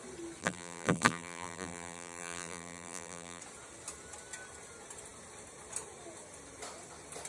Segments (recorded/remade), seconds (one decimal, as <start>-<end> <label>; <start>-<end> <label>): 0.0-0.4 recorded; 0.4-3.4 remade; 3.4-7.3 recorded